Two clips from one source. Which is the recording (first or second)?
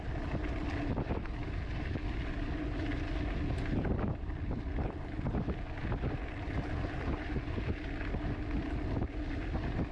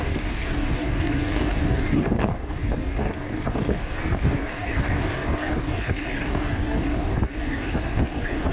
first